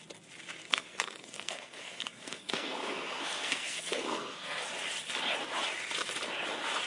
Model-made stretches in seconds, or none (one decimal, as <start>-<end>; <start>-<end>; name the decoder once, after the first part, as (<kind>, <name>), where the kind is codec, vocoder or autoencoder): 0.6-4.7 (codec, SNAC)